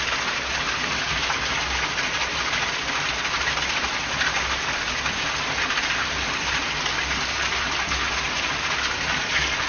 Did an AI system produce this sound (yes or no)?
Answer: no